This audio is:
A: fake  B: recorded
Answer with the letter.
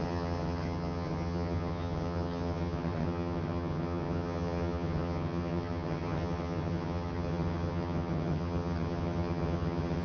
A